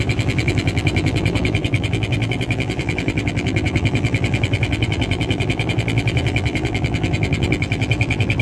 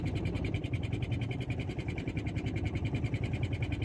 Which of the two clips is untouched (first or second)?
second